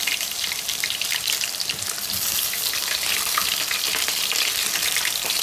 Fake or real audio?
real